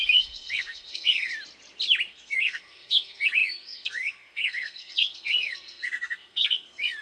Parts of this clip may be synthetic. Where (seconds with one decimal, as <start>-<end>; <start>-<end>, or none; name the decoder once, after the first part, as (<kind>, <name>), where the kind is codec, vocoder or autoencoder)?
0.0-1.3 (codec, SNAC); 2.1-7.0